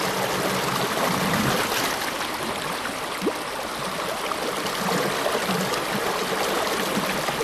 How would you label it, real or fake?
real